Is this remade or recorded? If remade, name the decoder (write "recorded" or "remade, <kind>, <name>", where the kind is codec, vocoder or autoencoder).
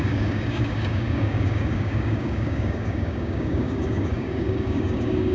remade, codec, DAC